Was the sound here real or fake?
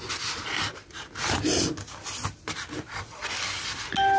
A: real